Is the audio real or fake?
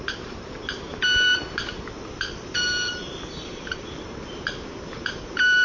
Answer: real